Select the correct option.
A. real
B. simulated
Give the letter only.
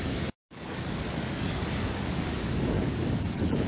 B